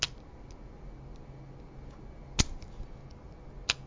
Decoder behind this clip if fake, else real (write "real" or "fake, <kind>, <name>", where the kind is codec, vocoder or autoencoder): real